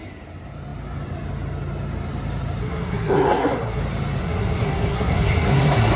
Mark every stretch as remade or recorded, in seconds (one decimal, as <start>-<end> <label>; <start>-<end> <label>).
0.0-2.6 recorded; 2.6-3.8 remade; 3.8-4.2 recorded; 4.2-6.0 remade